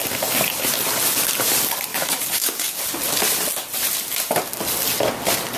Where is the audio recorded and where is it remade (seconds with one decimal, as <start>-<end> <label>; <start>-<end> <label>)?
0.0-1.9 recorded; 1.9-2.8 remade; 2.8-5.6 recorded